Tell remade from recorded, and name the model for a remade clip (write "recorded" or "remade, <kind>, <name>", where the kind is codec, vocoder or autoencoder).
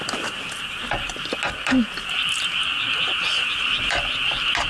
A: recorded